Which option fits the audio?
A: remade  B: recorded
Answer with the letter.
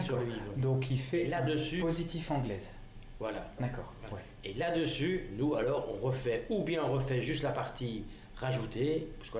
B